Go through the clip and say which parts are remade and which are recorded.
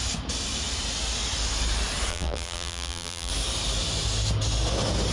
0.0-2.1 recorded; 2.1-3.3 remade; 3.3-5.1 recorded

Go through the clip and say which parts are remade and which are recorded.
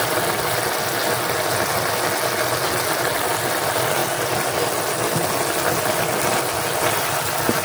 0.0-7.6 recorded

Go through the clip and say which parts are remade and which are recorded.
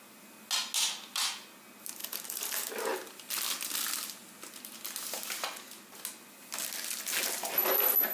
0.0-2.0 recorded; 2.0-2.7 remade; 2.7-8.1 recorded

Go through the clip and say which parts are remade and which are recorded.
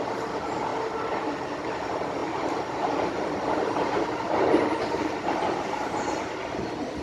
0.0-2.2 recorded; 2.2-6.3 remade; 6.3-7.0 recorded